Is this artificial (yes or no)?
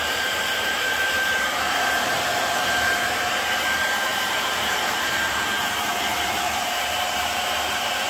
yes